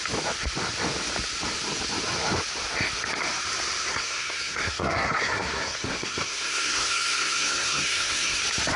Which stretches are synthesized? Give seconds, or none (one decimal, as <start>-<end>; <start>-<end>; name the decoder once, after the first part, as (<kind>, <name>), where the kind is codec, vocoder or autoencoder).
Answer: 3.9-8.4 (codec, SNAC)